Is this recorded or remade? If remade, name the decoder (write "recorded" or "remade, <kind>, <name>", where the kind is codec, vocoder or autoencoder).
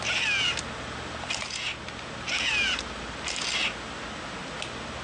recorded